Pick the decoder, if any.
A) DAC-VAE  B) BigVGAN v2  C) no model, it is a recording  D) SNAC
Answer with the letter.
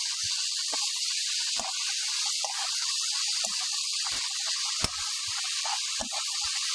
C